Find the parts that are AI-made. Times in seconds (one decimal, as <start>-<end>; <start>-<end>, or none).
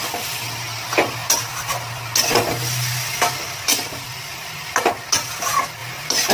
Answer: none